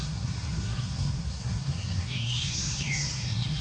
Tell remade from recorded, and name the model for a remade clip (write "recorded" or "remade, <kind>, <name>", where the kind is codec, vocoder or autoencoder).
remade, codec, SNAC